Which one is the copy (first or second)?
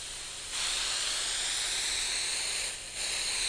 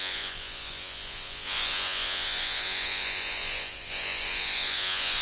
second